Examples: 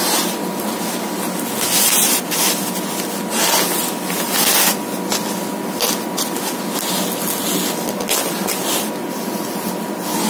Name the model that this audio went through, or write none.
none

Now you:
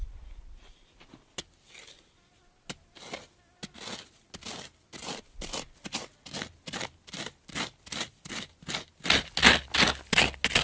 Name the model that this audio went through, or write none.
none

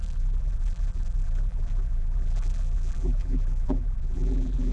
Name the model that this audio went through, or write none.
vocoder, BigVGAN v2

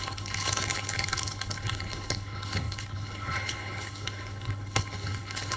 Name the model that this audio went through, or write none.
codec, HILCodec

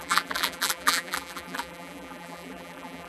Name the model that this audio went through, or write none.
vocoder, BigVGAN v2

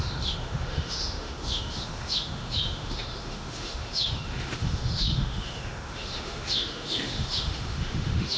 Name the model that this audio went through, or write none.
autoencoder, DAC-VAE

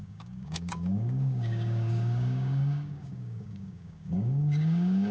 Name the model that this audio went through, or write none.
codec, DAC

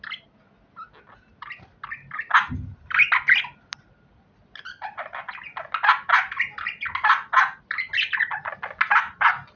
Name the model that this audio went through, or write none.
none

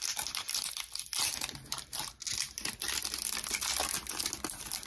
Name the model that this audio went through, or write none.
none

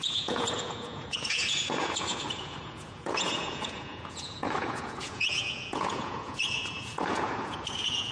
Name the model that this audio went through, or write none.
vocoder, Vocos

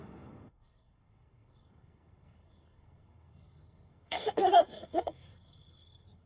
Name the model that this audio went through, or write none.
codec, SNAC